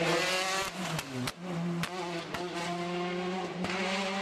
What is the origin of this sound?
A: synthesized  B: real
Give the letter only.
B